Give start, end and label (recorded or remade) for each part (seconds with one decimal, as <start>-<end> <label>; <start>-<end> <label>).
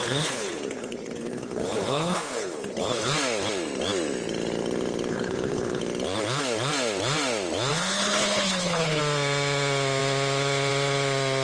0.0-3.1 remade; 3.1-5.1 recorded; 5.1-5.8 remade; 5.8-7.7 recorded; 7.7-9.0 remade; 9.0-11.4 recorded